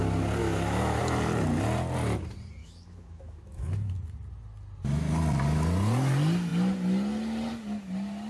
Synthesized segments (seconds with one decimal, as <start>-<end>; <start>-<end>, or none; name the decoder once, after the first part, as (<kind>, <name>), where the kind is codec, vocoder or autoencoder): 0.4-1.0 (autoencoder, DAC-VAE); 2.6-3.9